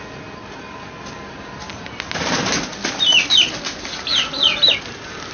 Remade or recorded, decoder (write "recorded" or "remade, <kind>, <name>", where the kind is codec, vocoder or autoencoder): recorded